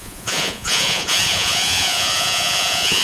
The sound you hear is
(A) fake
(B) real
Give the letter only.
A